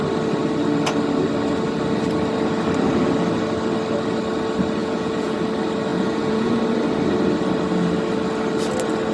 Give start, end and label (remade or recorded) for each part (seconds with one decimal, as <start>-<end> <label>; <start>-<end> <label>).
0.0-4.8 recorded; 4.8-5.4 remade; 5.4-5.9 recorded; 5.9-6.6 remade; 6.6-9.1 recorded